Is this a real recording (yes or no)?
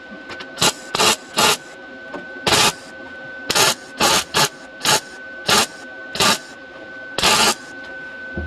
yes